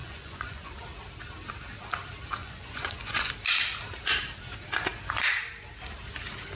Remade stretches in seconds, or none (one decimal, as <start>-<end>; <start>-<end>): 0.0-0.7; 2.4-3.3